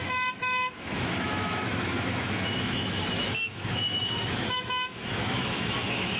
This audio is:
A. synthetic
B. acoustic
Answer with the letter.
A